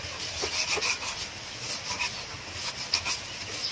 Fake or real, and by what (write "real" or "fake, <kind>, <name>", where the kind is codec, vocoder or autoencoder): real